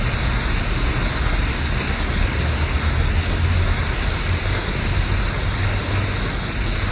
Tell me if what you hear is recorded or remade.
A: recorded